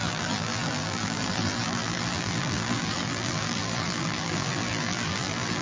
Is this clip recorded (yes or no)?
no